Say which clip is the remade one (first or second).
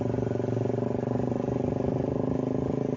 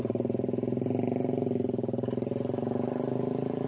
second